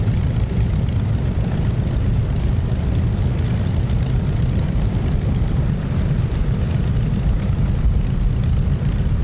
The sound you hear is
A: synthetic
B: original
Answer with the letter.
B